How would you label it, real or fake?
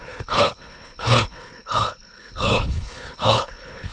fake